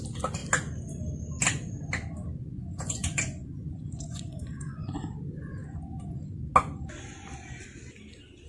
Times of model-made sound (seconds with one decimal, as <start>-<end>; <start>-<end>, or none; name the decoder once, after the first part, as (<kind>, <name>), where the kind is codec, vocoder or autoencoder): 2.4-5.0 (vocoder, Vocos); 5.6-6.2